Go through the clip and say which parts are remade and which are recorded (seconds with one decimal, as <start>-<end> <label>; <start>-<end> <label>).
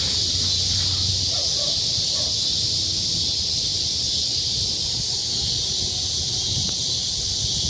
0.0-7.7 recorded